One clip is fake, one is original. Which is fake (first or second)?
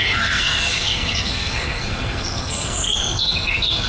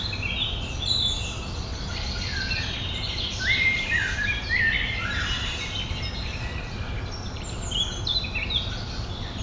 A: first